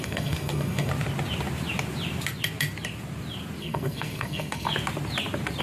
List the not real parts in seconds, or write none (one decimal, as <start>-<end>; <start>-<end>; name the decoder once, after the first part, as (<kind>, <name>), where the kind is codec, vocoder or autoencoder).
0.0-0.9 (codec, SNAC); 3.6-4.7